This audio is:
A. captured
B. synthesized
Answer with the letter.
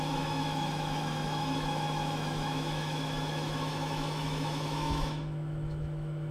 B